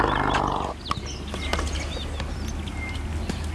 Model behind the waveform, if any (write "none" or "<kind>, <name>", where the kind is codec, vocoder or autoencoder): none